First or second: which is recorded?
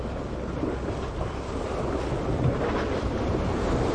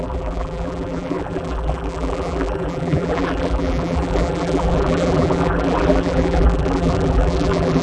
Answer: first